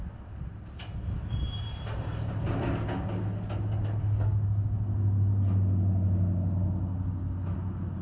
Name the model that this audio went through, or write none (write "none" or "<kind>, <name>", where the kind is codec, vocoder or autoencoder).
none